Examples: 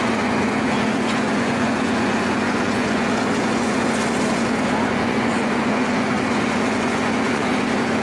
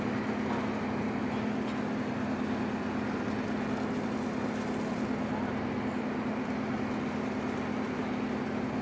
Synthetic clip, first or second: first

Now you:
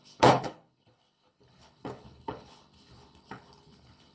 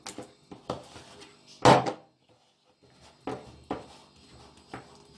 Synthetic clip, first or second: first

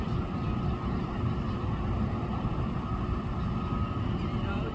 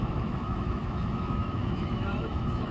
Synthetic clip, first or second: second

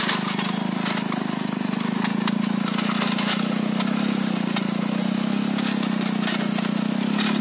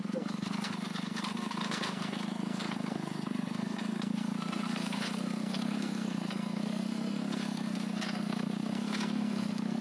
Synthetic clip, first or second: second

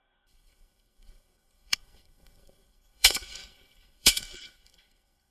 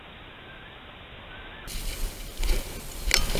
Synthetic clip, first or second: first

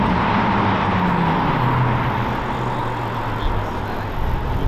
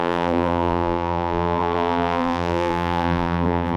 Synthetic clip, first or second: second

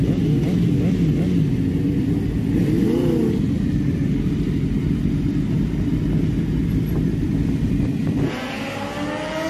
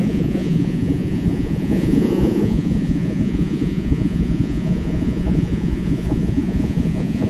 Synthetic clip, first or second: second